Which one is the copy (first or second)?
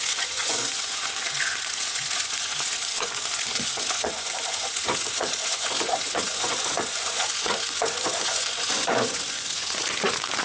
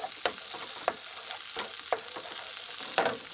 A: first